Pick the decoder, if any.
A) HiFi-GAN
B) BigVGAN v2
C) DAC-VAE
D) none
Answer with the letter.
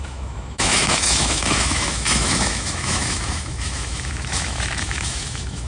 C